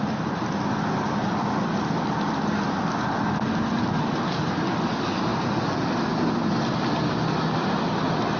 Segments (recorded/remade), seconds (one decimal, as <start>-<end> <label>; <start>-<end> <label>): 0.0-8.4 recorded